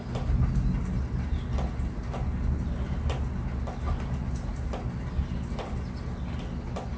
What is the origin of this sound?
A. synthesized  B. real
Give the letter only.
B